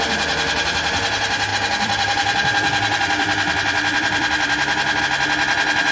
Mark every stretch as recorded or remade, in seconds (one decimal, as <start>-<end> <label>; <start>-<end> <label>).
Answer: 0.0-1.5 recorded; 1.5-5.0 remade; 5.0-5.9 recorded